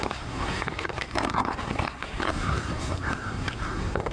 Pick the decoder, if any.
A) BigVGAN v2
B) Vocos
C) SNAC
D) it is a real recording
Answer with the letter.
C